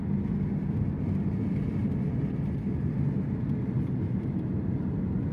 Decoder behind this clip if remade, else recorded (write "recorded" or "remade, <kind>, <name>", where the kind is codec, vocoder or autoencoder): recorded